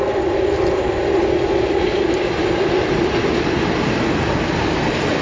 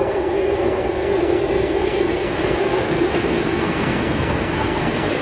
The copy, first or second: second